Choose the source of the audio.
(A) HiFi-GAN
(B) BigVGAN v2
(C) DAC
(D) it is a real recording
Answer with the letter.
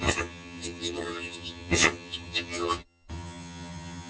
A